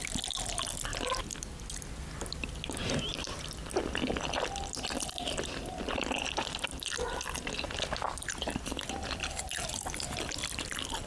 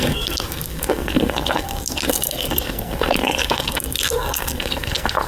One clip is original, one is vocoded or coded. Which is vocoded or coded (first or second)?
second